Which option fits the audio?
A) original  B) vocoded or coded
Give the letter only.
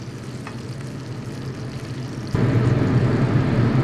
A